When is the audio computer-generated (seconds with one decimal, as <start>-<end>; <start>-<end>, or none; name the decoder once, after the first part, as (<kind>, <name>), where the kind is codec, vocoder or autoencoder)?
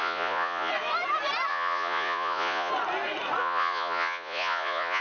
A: 0.0-0.7 (vocoder, Vocos); 1.5-2.7; 3.4-5.0